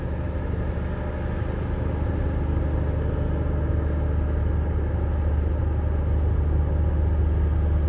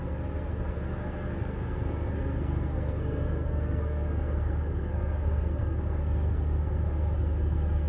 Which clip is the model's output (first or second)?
second